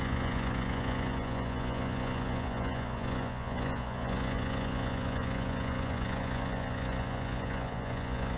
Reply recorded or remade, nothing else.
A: remade